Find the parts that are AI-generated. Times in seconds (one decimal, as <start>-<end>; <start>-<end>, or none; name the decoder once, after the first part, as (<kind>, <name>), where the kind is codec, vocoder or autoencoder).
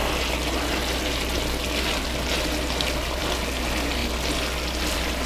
none